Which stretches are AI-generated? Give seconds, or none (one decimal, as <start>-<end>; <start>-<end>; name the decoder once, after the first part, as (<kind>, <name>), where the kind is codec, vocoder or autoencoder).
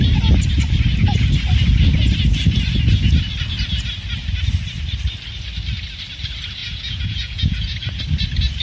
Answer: 6.6-8.0 (vocoder, Vocos)